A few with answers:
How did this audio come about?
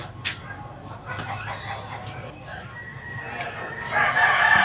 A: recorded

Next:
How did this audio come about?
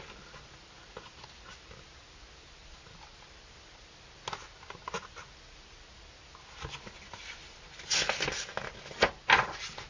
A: recorded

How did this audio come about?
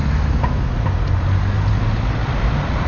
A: recorded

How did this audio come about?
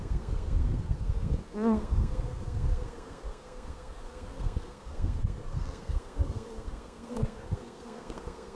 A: remade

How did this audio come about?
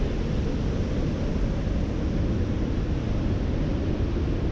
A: recorded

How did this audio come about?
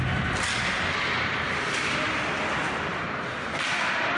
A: recorded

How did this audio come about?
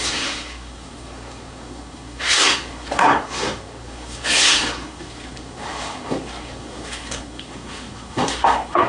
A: remade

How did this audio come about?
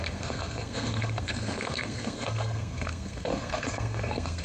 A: remade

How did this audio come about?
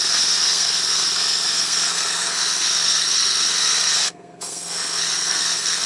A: remade